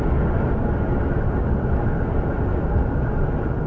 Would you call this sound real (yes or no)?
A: yes